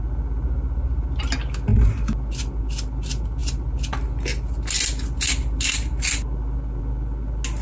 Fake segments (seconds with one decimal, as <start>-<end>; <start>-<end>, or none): none